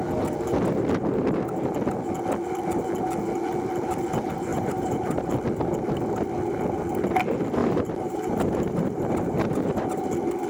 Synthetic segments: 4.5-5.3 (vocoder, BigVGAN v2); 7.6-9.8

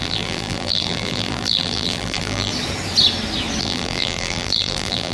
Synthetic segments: 0.0-2.5 (vocoder, BigVGAN v2); 3.6-5.1

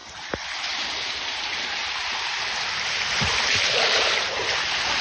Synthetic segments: 0.0-5.0 (vocoder, BigVGAN v2)

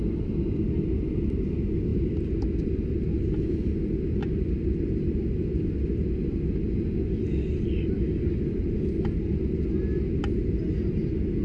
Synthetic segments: none

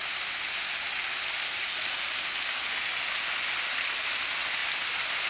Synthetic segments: 4.6-5.3 (vocoder, BigVGAN v2)

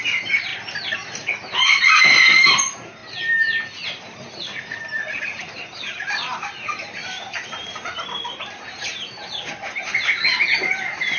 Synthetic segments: 0.0-0.5 (vocoder, BigVGAN v2); 2.2-3.0; 5.2-11.2

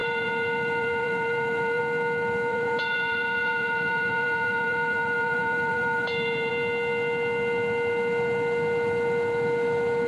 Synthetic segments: 0.0-1.8 (vocoder, BigVGAN v2); 2.5-6.5